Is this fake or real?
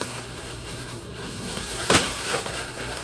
fake